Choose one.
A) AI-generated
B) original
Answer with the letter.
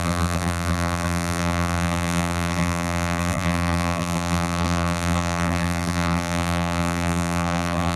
A